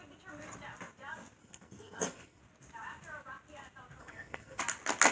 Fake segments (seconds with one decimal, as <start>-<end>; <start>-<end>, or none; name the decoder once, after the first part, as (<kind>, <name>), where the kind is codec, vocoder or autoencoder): 1.4-2.4 (codec, SNAC); 4.0-4.6

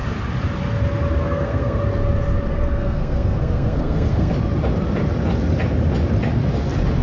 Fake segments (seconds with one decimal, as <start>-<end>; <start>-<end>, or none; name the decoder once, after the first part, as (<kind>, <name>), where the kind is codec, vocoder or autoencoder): 1.2-1.8 (codec, SNAC); 2.5-4.3

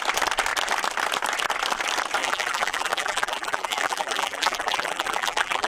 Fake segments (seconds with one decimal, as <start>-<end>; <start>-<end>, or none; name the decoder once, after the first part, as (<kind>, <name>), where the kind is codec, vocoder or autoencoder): 2.2-5.7 (vocoder, BigVGAN v2)

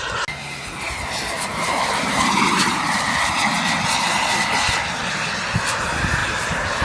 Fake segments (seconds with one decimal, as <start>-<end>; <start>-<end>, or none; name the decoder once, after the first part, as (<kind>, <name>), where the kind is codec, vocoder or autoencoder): 1.5-3.3 (vocoder, BigVGAN v2); 6.2-6.8

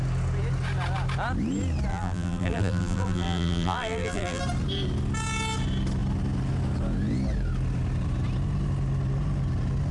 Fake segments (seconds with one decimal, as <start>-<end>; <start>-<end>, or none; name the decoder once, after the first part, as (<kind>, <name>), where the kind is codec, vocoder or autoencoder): 1.9-4.4 (vocoder, BigVGAN v2)

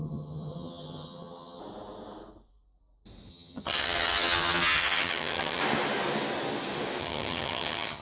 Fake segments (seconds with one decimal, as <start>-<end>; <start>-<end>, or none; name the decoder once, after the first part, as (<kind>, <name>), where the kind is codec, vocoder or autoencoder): 0.0-1.6 (vocoder, HiFi-GAN); 3.3-5.6; 7.0-8.0